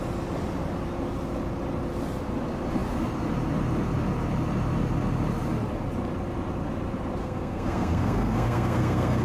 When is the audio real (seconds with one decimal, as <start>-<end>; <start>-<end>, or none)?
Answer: 0.0-7.2